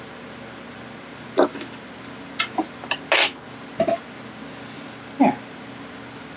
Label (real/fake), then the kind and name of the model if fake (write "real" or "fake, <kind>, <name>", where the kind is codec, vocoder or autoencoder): real